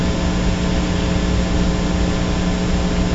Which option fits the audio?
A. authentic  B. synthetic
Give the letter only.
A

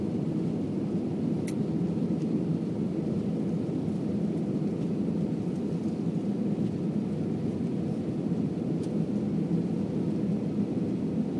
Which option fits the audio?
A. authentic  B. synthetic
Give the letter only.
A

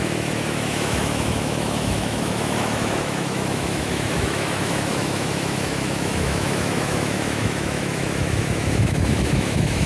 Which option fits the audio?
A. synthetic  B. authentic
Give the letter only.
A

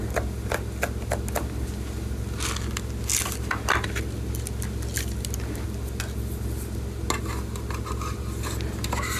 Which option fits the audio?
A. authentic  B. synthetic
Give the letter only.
A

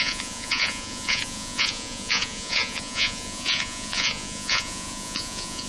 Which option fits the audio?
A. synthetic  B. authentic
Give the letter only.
A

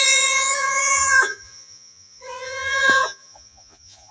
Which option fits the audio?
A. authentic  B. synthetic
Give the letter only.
B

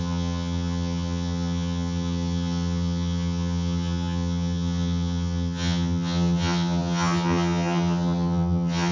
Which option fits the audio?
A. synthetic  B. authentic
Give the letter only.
A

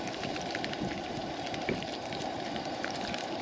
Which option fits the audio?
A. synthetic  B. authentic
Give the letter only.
A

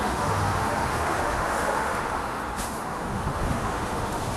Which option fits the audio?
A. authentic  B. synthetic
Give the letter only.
B